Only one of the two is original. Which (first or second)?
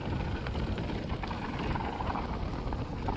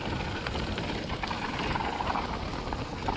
first